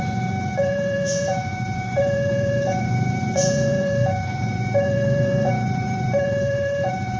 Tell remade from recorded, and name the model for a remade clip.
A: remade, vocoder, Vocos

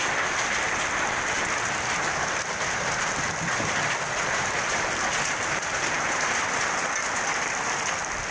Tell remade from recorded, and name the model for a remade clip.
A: recorded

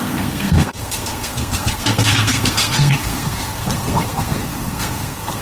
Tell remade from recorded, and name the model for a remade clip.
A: remade, codec, SNAC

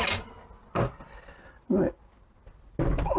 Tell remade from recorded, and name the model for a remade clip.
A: recorded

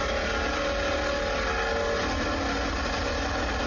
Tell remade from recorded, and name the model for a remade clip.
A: recorded